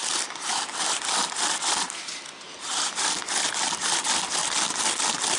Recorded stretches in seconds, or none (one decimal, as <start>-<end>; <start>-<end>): 0.0-5.4